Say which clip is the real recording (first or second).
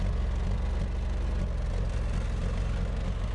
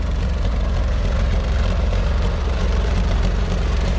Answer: first